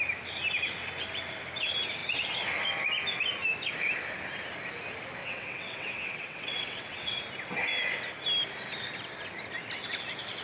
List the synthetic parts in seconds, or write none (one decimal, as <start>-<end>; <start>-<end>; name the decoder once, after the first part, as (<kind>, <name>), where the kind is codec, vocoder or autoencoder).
5.2-7.2 (vocoder, WaveNeXt)